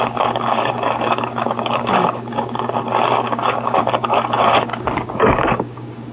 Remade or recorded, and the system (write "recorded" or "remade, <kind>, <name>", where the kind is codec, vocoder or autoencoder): remade, codec, DAC